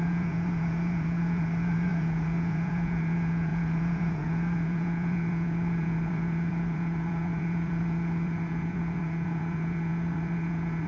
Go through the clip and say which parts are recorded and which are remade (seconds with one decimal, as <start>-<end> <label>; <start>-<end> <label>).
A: 0.0-10.9 remade